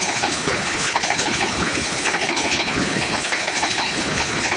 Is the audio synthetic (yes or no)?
yes